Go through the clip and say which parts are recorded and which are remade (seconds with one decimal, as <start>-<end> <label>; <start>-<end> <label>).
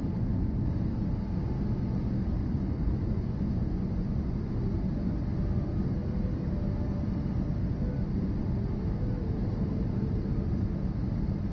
0.0-0.7 remade; 0.7-2.4 recorded; 2.4-4.5 remade; 4.5-11.5 recorded